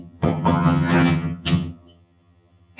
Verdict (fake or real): fake